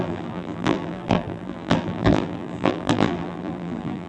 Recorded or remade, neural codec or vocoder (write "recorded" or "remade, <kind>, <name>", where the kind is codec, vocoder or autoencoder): remade, vocoder, BigVGAN v2